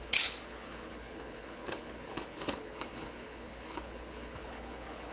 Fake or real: fake